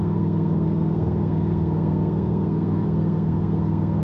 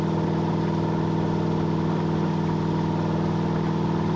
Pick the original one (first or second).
second